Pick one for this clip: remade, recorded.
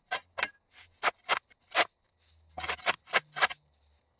recorded